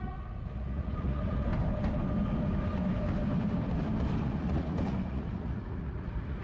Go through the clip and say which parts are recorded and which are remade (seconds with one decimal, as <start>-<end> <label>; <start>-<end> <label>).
0.0-1.5 remade; 1.5-4.2 recorded; 4.2-6.4 remade